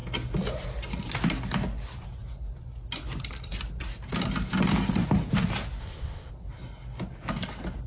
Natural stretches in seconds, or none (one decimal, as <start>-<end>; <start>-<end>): 0.0-5.8; 6.3-7.9